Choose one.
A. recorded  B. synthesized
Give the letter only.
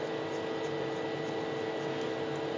A